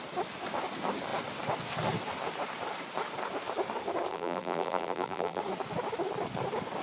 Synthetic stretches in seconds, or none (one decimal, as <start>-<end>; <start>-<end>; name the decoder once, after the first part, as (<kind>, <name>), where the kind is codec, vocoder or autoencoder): 4.1-5.4 (vocoder, BigVGAN v2)